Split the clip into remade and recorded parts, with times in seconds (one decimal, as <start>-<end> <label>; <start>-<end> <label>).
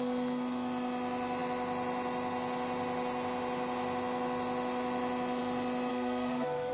0.0-5.9 recorded; 5.9-6.7 remade